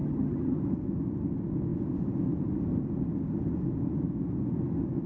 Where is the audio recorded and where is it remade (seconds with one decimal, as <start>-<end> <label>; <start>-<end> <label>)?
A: 0.0-0.6 remade; 0.6-5.1 recorded